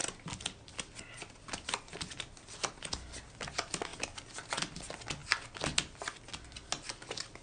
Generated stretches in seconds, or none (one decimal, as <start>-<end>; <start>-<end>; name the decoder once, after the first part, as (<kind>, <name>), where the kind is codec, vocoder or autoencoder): none